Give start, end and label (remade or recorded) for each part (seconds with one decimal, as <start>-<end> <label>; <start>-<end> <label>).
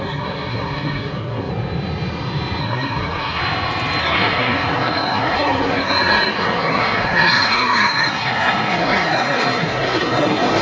0.0-1.5 remade; 1.5-2.6 recorded; 2.6-3.4 remade; 3.4-4.0 recorded; 4.0-10.6 remade